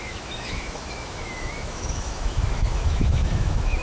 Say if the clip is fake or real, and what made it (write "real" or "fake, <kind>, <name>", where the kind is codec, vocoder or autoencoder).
fake, autoencoder, DAC-VAE